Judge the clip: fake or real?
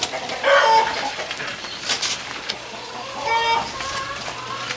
real